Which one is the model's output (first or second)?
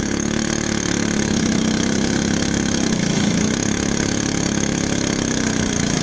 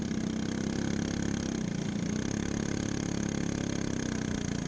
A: first